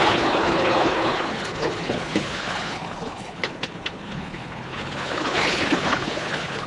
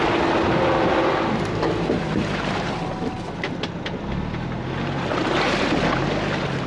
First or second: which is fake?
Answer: first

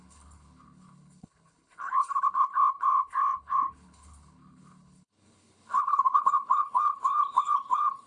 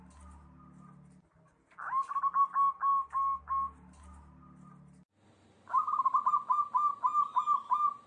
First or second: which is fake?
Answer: first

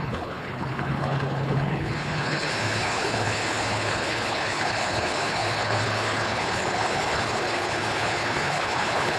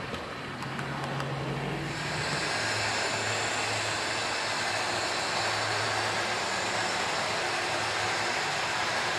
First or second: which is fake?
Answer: first